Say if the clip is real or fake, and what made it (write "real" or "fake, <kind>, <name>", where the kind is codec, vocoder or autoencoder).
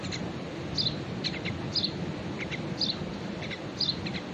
real